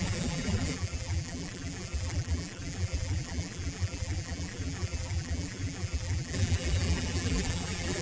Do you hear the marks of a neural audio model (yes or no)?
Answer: yes